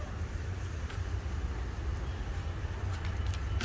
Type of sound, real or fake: real